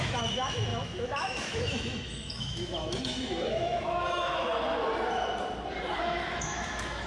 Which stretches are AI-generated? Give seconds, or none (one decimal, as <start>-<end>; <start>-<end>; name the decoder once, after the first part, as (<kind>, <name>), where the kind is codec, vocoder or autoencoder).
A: 0.0-4.5 (autoencoder, DAC-VAE); 6.0-7.1